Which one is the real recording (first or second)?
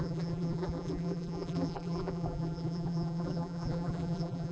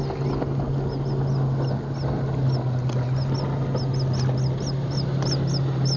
second